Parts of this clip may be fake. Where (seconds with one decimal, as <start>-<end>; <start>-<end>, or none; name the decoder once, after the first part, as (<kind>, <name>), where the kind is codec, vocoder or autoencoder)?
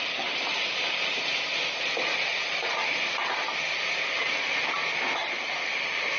none